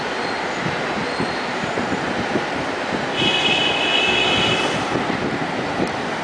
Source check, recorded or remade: recorded